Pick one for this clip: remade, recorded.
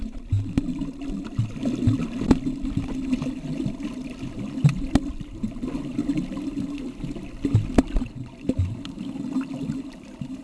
recorded